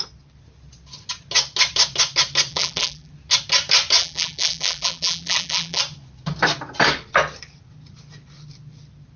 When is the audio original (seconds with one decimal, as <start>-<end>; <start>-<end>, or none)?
0.0-2.5; 3.1-4.0; 5.8-9.2